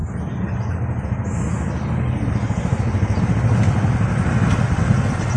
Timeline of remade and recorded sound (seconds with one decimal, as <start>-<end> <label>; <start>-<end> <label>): 0.0-5.4 recorded